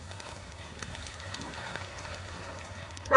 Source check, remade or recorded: remade